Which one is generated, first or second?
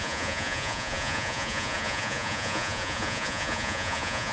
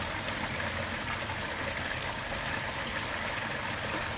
first